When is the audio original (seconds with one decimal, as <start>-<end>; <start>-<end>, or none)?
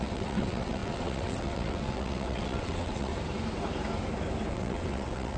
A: 3.1-4.5